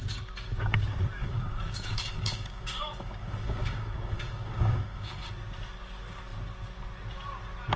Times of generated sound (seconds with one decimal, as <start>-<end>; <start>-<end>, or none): 1.2-5.3